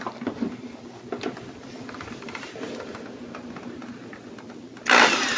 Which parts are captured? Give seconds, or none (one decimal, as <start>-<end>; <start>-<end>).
0.0-5.4